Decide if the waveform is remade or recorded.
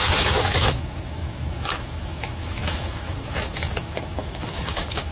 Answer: remade